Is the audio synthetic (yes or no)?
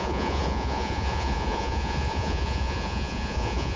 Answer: yes